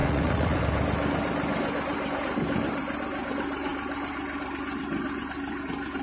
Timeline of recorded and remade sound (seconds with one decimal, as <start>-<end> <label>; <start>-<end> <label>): 0.0-0.6 remade; 0.6-6.0 recorded